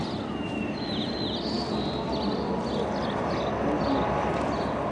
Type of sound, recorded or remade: recorded